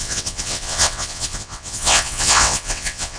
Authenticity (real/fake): fake